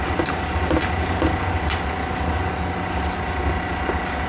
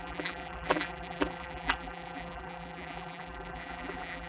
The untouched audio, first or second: first